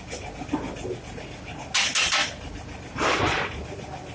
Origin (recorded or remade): recorded